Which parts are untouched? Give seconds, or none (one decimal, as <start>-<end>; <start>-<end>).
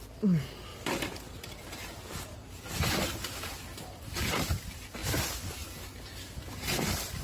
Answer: 0.0-0.7; 4.0-7.2